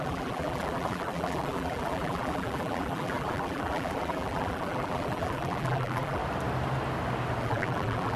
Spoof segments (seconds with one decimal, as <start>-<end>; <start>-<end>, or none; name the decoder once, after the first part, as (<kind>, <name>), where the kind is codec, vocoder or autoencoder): 0.0-6.2 (vocoder, BigVGAN v2); 7.4-8.2